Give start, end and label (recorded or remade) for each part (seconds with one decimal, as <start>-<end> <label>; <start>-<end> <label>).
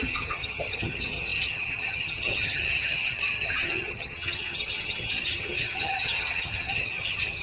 0.0-7.4 remade